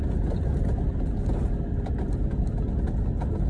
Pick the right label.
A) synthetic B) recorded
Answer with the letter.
B